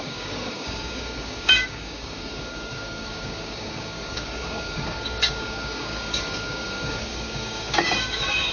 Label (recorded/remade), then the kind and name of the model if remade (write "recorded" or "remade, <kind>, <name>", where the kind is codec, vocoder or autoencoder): remade, codec, DAC